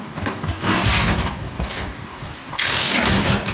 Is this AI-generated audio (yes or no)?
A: yes